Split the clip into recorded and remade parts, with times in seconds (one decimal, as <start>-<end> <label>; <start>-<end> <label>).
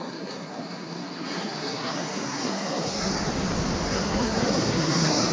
0.0-3.1 remade; 3.1-3.9 recorded; 3.9-5.3 remade